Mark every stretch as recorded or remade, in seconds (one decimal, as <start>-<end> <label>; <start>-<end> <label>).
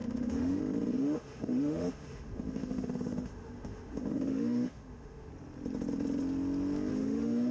0.0-0.6 remade; 0.6-1.0 recorded; 1.0-5.3 remade; 5.3-6.9 recorded; 6.9-7.5 remade